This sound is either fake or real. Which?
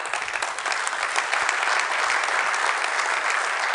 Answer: real